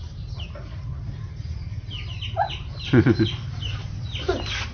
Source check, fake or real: real